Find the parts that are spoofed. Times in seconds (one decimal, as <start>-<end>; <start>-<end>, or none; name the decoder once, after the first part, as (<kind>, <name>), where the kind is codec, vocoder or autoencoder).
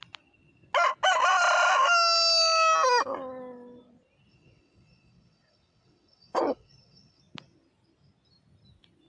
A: 4.3-7.2 (vocoder, WaveNeXt)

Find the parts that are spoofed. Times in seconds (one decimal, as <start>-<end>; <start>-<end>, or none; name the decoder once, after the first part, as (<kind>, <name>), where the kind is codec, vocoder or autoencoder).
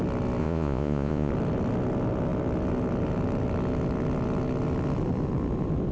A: 0.4-1.3 (vocoder, Vocos)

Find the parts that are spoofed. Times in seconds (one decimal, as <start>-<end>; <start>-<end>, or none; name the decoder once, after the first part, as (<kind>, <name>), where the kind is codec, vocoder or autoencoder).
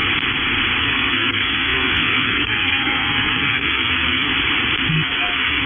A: 0.8-4.3 (codec, SNAC); 4.9-5.7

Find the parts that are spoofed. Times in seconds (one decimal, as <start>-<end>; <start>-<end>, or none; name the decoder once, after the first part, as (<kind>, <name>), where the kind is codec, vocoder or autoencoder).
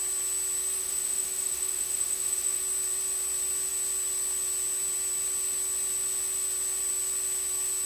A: 0.8-2.6 (autoencoder, DAC-VAE)